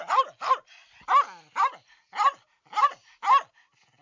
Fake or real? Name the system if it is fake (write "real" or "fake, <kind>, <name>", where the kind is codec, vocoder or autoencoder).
real